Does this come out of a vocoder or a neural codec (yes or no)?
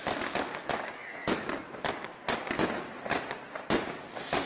no